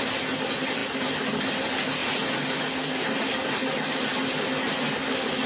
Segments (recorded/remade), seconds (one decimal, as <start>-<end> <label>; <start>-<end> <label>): 0.0-5.5 recorded